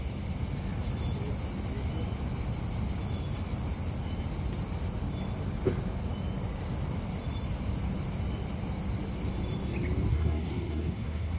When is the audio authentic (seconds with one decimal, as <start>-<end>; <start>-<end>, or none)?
0.0-10.1